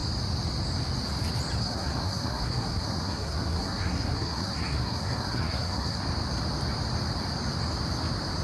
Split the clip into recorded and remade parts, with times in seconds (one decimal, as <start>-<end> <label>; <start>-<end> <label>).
0.0-1.6 recorded; 1.6-6.0 remade; 6.0-8.4 recorded